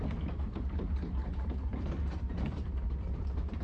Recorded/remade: remade